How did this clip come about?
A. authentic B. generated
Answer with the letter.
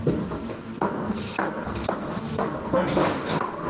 B